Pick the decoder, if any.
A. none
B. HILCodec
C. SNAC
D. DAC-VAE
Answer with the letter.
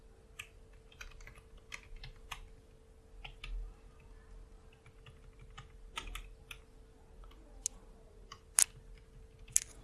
A